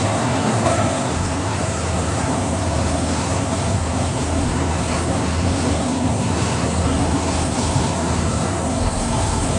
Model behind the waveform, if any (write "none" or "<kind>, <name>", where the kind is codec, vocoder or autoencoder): codec, SNAC